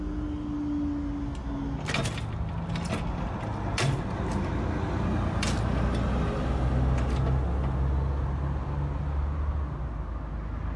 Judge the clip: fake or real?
real